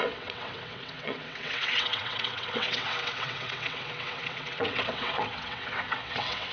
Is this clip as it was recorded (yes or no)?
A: no